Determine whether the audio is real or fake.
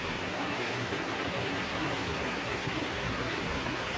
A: fake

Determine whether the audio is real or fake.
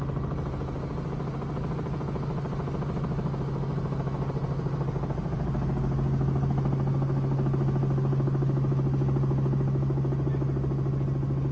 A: real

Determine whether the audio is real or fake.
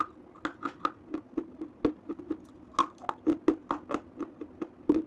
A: real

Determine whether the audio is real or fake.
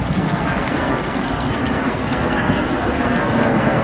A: fake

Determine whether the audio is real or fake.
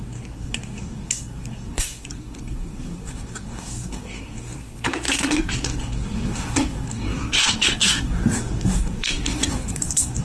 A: fake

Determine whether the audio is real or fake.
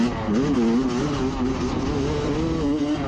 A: real